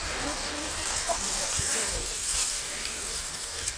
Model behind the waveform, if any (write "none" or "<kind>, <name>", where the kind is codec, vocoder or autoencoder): codec, DAC